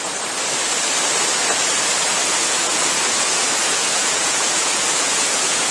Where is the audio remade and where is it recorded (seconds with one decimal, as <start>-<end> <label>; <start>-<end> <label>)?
0.0-2.2 recorded; 2.2-5.7 remade